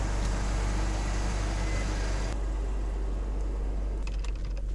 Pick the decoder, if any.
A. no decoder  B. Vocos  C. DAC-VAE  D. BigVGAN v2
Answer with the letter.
A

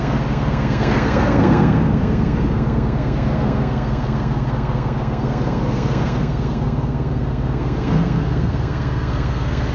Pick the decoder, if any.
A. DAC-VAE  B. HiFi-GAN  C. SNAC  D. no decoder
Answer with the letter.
C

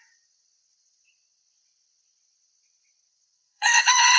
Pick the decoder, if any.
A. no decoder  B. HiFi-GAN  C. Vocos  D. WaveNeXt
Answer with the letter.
D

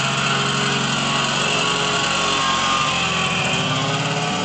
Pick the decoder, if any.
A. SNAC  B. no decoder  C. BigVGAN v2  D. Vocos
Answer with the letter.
B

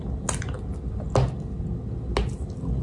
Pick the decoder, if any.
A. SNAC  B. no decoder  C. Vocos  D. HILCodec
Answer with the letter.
B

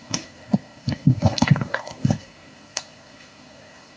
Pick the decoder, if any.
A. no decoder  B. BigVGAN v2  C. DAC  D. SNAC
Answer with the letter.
D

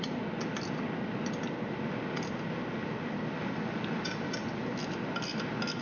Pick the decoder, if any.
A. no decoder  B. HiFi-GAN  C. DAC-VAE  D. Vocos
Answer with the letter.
A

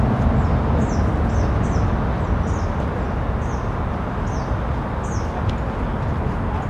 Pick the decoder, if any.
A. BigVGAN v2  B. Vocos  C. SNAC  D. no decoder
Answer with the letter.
D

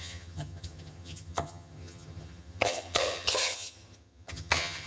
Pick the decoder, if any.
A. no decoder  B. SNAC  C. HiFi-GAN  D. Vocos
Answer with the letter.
C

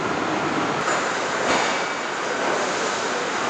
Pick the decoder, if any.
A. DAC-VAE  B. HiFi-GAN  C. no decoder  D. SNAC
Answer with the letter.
C